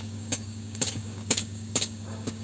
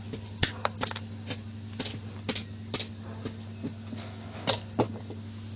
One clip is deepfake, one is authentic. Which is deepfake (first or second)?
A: first